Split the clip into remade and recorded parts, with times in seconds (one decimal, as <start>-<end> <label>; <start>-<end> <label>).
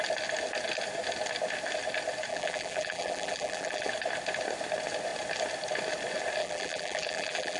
0.0-2.3 recorded; 2.3-3.9 remade; 3.9-6.4 recorded; 6.4-7.6 remade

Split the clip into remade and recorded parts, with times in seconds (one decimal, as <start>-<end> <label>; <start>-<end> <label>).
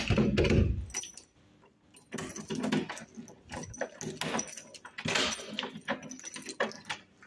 0.0-7.3 recorded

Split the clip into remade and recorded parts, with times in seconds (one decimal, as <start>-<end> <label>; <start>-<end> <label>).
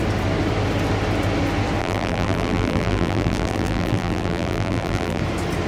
0.0-1.8 recorded; 1.8-5.2 remade; 5.2-5.7 recorded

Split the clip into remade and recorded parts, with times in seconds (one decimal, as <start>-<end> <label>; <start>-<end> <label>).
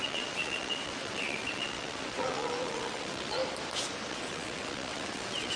0.0-3.4 remade; 3.4-4.1 recorded; 4.1-5.6 remade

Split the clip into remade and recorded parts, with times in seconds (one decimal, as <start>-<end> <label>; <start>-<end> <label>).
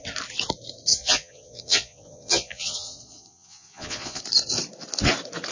0.0-0.9 recorded; 0.9-4.2 remade; 4.2-5.5 recorded